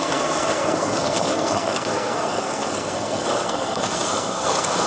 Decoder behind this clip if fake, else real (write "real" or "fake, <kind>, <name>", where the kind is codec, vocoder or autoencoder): fake, codec, SNAC